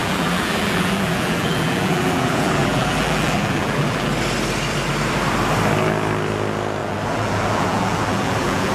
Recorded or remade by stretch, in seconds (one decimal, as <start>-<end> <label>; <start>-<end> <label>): 0.0-4.1 remade; 4.1-6.8 recorded; 6.8-8.7 remade